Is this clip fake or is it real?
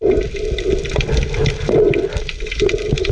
real